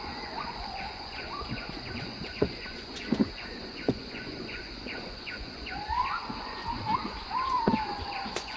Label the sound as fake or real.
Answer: fake